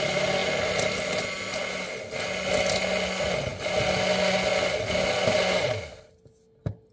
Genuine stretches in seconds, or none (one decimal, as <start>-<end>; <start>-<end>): 0.0-6.9